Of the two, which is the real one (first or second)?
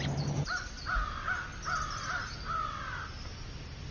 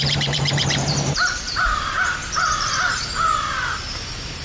first